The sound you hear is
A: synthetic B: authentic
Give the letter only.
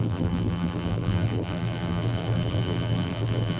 A